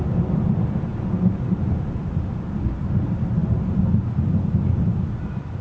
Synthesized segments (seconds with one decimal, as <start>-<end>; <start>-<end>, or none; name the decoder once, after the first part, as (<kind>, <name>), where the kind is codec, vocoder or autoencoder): none